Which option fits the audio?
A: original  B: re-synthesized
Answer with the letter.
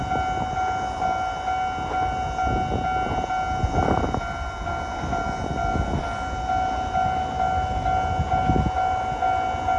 A